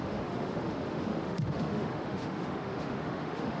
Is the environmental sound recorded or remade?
remade